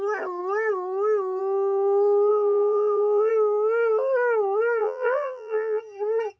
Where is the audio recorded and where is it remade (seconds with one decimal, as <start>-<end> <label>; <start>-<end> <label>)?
0.0-2.3 recorded; 2.3-3.3 remade; 3.3-4.8 recorded; 4.8-5.8 remade; 5.8-6.4 recorded